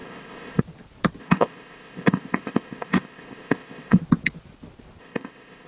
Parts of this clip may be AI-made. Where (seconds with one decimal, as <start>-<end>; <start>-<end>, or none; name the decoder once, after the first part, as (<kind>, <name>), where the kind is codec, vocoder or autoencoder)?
0.0-0.6 (codec, ZipCodec); 1.2-4.0; 5.0-5.7